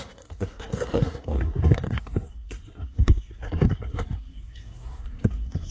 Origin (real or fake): fake